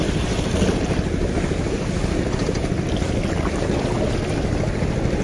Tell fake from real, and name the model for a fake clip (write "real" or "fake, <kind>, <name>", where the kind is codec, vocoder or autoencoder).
real